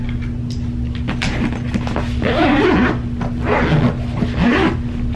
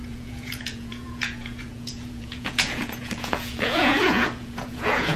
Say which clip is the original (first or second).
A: first